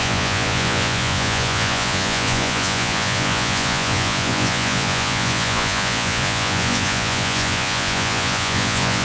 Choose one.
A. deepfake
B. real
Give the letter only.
A